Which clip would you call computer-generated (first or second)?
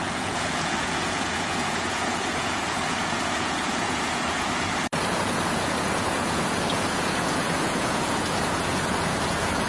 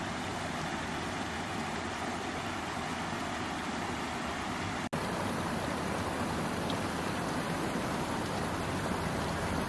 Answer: first